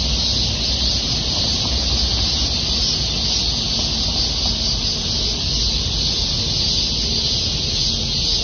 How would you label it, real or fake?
real